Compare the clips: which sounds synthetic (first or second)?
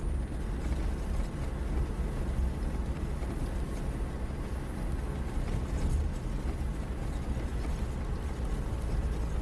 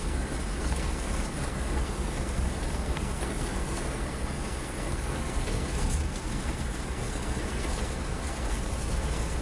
second